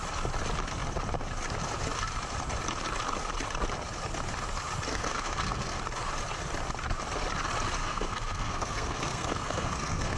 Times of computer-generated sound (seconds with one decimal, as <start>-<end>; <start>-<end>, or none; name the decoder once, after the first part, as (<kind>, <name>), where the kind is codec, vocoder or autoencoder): 4.9-5.8 (codec, SNAC); 7.8-10.2